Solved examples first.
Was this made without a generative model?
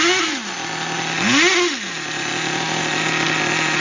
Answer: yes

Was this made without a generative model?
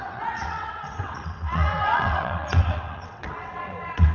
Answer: no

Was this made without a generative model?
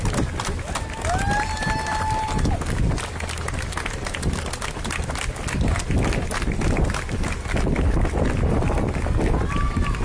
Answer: yes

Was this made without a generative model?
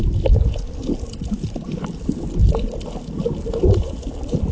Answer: yes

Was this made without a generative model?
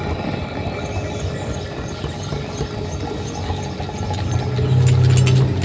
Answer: yes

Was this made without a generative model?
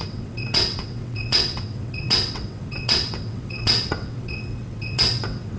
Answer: no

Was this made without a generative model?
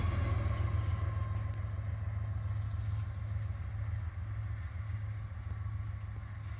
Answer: yes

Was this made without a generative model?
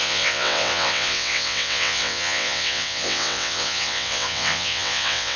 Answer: no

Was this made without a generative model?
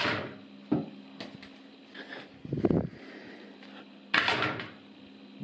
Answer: yes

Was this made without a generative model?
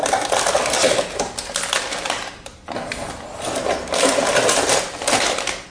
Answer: yes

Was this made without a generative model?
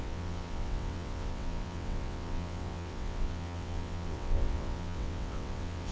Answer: no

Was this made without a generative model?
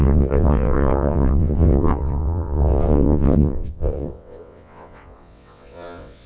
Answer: no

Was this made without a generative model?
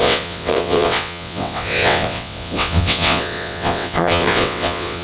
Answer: no